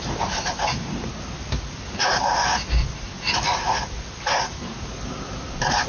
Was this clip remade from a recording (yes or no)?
no